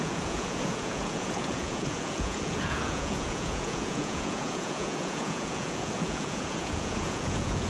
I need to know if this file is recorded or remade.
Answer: remade